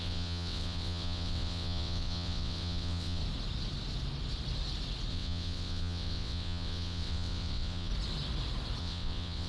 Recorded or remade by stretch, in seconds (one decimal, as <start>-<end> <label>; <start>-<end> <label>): 0.0-3.2 remade; 3.2-5.1 recorded; 5.1-7.9 remade; 7.9-8.8 recorded; 8.8-9.5 remade